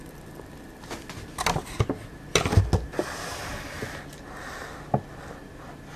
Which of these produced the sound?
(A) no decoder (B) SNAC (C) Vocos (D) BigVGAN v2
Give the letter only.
A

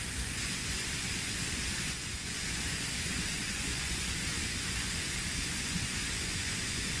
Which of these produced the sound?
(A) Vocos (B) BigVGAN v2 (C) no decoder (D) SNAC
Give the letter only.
A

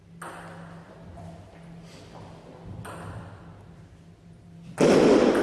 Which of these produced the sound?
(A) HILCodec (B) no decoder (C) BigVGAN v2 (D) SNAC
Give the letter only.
B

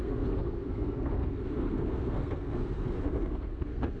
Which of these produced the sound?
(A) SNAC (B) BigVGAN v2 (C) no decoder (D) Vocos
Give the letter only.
A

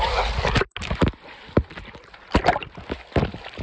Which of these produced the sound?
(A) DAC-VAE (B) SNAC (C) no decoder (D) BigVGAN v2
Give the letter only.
C